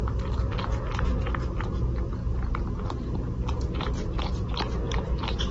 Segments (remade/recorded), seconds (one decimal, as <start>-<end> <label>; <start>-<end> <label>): 0.0-5.5 recorded